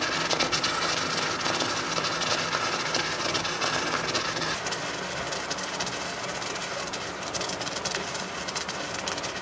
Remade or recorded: recorded